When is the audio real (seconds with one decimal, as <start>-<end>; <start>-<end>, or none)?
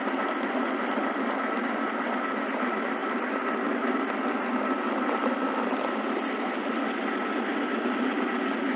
0.0-8.8